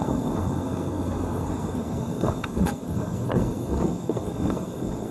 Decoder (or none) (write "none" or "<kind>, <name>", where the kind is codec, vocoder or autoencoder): codec, SNAC